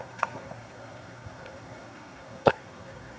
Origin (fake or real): fake